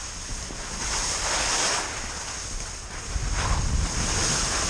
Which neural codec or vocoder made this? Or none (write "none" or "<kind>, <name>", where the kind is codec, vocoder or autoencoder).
none